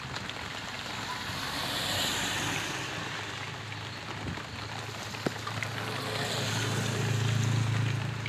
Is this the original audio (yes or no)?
yes